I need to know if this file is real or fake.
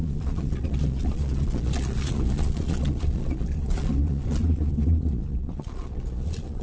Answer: fake